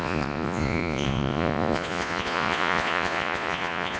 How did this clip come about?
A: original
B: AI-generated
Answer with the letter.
B